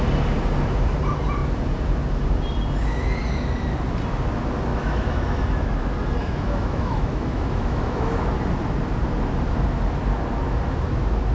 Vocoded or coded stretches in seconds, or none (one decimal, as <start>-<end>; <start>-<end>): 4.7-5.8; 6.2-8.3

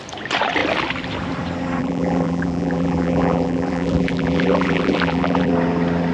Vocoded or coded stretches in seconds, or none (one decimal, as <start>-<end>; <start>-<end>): 1.8-5.5

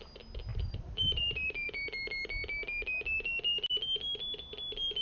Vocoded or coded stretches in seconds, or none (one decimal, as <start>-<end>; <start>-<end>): 0.5-2.1